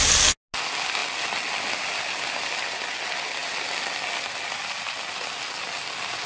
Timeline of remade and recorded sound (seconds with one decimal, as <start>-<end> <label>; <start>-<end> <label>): 0.0-6.3 recorded